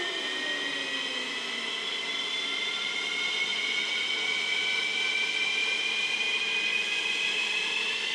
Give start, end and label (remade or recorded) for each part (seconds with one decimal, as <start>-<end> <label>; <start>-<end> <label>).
0.0-3.5 recorded; 3.5-4.8 remade; 4.8-6.7 recorded; 6.7-7.5 remade; 7.5-8.1 recorded